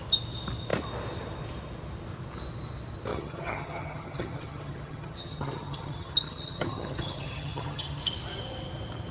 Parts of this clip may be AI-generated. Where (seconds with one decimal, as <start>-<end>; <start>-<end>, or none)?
3.1-8.0